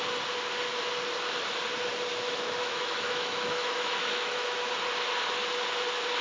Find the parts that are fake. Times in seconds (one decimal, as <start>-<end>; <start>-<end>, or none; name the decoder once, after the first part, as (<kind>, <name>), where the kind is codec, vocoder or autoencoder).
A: 2.1-4.7 (autoencoder, DAC-VAE)